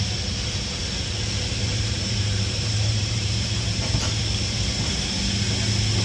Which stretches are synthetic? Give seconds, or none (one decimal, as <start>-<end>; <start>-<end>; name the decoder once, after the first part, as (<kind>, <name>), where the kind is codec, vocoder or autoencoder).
1.7-5.2 (vocoder, BigVGAN v2)